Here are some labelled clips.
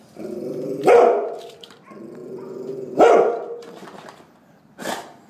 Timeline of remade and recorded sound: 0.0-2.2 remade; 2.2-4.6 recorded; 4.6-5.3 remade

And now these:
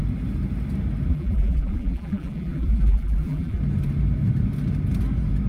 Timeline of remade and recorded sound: 0.0-1.1 recorded; 1.1-3.6 remade; 3.6-5.5 recorded

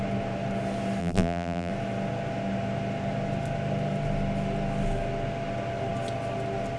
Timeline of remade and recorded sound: 0.0-1.0 recorded; 1.0-1.7 remade; 1.7-6.8 recorded

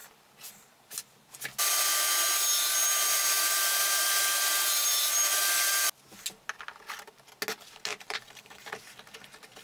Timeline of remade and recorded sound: 0.0-2.8 recorded; 2.8-5.7 remade; 5.7-7.9 recorded; 7.9-8.7 remade; 8.7-9.6 recorded

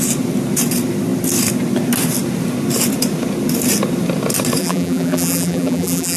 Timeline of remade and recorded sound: 0.0-4.6 recorded; 4.6-6.2 remade

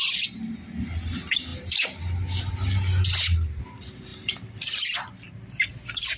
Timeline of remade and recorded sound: 0.0-4.1 recorded; 4.1-4.8 remade; 4.8-6.2 recorded

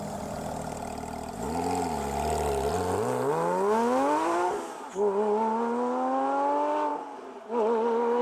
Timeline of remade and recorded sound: 0.0-8.2 recorded

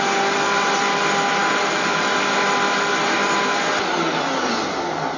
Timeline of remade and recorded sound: 0.0-5.2 recorded